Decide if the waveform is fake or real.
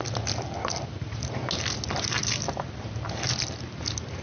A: real